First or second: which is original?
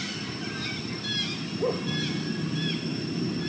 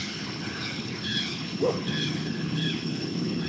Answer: first